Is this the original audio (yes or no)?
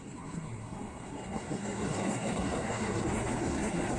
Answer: no